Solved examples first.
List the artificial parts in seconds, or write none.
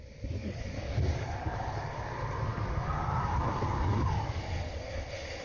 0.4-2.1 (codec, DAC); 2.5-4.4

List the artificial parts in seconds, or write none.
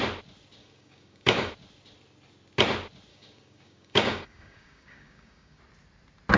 0.6-1.5 (codec, DAC); 3.1-5.6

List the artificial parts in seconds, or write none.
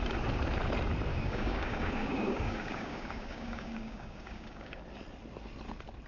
1.1-4.8 (codec, DAC)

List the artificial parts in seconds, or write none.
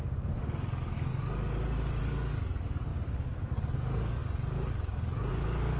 0.0-1.1 (codec, DAC); 2.0-2.9; 3.4-4.2; 5.3-5.8